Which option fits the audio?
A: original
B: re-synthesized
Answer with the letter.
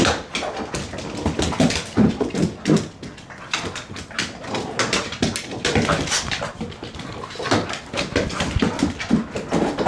A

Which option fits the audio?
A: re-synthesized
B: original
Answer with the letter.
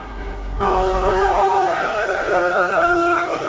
A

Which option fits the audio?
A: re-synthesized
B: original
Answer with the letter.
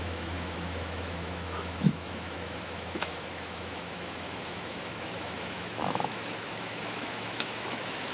A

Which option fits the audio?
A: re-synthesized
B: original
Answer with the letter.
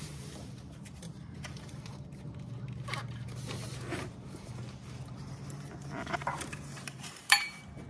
A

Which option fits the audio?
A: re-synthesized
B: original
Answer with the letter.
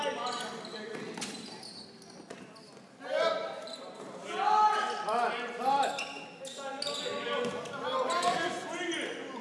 B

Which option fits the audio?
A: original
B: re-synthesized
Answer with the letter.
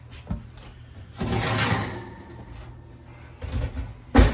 A